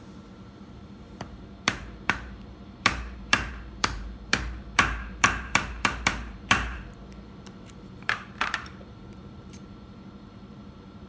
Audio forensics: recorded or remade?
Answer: remade